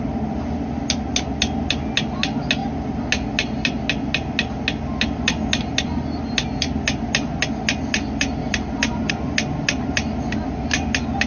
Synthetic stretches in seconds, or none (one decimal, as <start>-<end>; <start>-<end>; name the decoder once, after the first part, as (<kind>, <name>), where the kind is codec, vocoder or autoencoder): 8.4-9.1 (vocoder, BigVGAN v2)